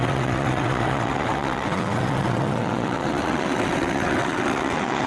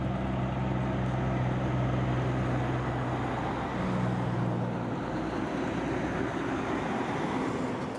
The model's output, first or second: first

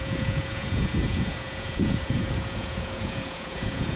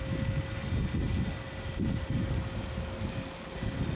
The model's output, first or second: first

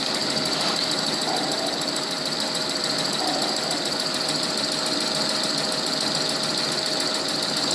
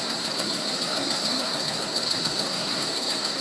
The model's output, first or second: second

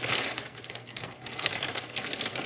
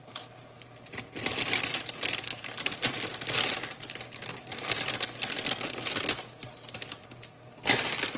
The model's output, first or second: first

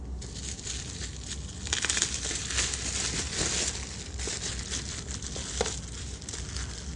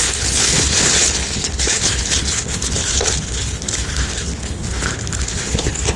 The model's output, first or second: second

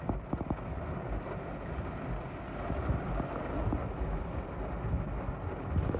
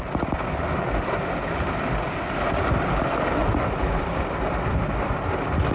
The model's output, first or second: second